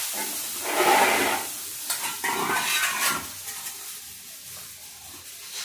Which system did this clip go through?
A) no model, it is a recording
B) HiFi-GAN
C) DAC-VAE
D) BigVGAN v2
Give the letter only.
A